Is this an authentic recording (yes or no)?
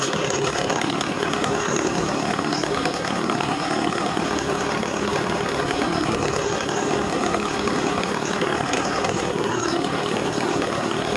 no